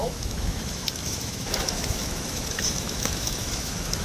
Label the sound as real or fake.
fake